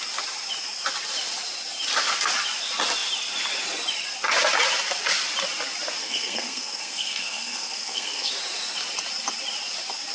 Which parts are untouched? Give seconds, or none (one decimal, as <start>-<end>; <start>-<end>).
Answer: 0.0-6.0; 8.3-10.1